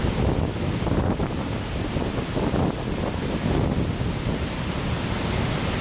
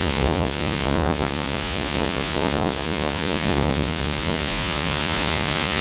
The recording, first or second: first